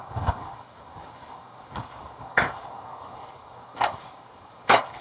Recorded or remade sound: remade